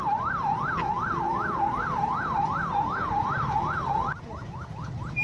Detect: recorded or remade recorded